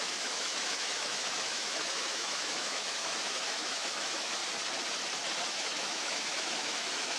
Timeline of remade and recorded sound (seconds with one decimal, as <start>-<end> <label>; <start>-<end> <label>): 0.0-4.4 remade; 4.4-5.5 recorded; 5.5-7.2 remade